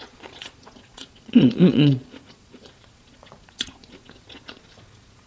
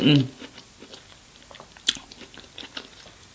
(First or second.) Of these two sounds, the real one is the second